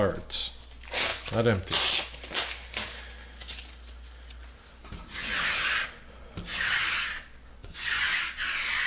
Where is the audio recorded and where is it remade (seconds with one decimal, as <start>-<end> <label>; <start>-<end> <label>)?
0.0-7.6 recorded; 7.6-8.2 remade; 8.2-8.9 recorded